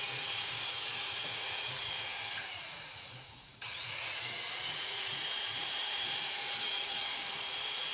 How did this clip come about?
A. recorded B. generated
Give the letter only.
B